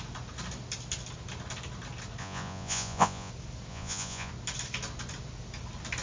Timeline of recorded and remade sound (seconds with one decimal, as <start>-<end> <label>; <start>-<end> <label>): 0.0-2.2 recorded; 2.2-3.3 remade; 3.3-3.7 recorded; 3.7-4.3 remade; 4.3-6.0 recorded